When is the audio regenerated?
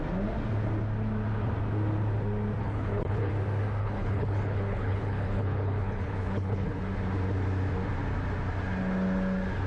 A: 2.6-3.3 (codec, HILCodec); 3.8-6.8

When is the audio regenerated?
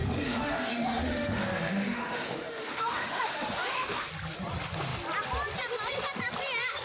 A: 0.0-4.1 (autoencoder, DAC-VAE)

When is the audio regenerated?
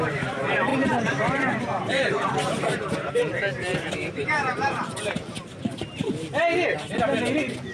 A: 0.7-3.1 (vocoder, BigVGAN v2); 3.7-6.1